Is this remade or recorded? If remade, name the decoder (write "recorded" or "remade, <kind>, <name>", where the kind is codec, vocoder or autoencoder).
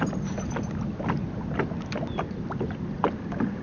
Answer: recorded